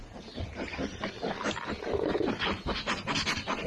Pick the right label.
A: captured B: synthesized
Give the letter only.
A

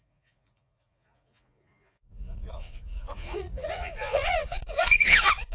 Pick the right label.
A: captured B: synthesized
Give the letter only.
B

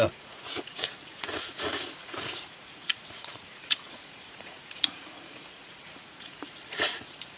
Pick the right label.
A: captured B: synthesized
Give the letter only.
B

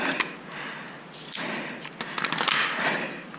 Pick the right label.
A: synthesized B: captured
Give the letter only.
B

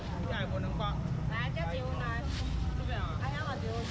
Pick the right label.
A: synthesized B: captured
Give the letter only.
B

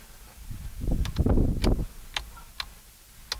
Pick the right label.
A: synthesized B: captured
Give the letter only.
B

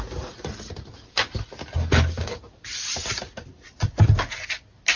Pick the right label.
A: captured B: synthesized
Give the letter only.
A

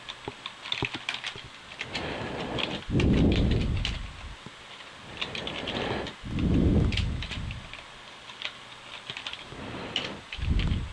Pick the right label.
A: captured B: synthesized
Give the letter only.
A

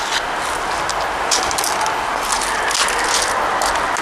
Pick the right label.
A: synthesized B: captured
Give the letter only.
B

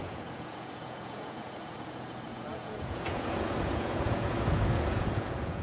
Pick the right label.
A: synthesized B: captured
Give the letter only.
A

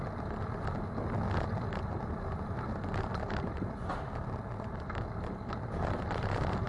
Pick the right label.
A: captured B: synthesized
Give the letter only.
A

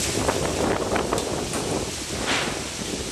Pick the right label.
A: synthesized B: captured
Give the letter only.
B